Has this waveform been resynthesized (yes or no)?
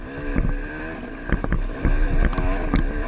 no